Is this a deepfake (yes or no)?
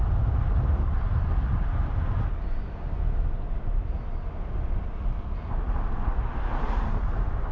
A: no